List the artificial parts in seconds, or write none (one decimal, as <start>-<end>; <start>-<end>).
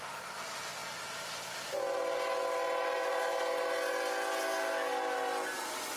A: none